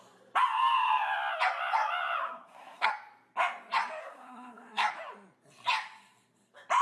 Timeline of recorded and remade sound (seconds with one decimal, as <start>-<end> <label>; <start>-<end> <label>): 0.0-2.2 recorded; 2.2-2.9 remade; 2.9-4.0 recorded; 4.0-4.9 remade; 4.9-6.8 recorded